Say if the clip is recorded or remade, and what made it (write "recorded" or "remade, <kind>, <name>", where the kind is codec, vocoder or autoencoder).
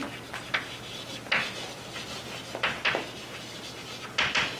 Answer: recorded